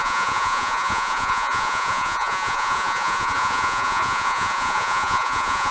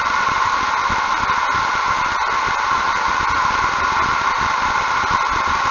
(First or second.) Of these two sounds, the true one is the second